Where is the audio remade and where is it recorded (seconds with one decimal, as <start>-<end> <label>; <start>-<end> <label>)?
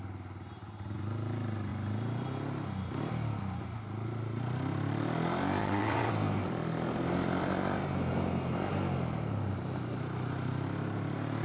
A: 0.0-5.6 recorded; 5.6-6.1 remade; 6.1-11.4 recorded